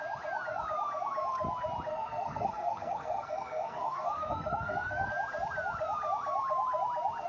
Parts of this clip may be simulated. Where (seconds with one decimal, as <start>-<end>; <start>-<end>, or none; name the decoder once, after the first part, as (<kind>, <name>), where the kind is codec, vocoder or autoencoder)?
1.9-5.1 (codec, SNAC)